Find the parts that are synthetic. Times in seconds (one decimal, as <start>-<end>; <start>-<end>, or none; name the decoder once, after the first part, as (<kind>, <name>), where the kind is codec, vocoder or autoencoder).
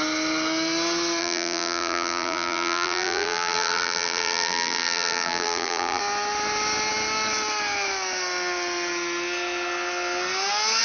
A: 1.2-6.0 (vocoder, BigVGAN v2)